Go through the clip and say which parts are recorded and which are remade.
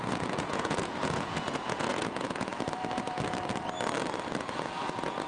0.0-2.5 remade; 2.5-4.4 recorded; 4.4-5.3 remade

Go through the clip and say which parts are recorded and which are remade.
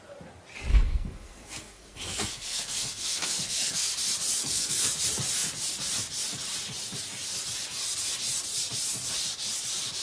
0.0-0.7 recorded; 0.7-3.9 remade; 3.9-4.4 recorded; 4.4-5.0 remade; 5.0-10.0 recorded